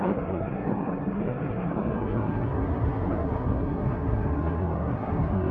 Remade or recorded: remade